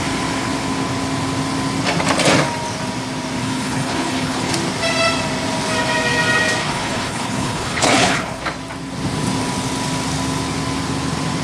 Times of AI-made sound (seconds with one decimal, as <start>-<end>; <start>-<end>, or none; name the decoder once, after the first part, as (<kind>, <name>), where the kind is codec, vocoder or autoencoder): 3.4-4.5 (codec, HILCodec); 6.6-8.4